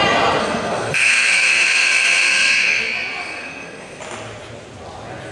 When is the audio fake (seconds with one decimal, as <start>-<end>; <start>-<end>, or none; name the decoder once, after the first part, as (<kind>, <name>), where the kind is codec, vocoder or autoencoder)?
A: 0.4-2.8 (codec, SNAC); 3.2-4.0